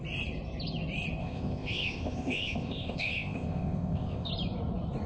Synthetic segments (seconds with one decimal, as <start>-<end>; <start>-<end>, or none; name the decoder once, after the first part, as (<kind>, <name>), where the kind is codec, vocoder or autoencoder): 1.2-4.3 (codec, ZipCodec)